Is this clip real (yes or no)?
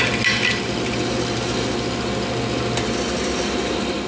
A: yes